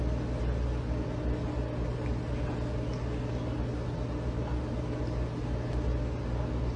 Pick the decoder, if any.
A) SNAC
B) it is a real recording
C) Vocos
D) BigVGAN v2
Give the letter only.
B